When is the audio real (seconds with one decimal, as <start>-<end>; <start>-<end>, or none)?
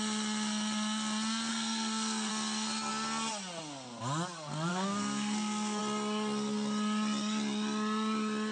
0.0-1.5; 2.3-4.7; 5.8-8.5